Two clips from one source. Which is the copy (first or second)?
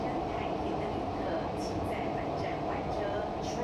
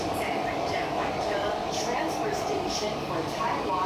second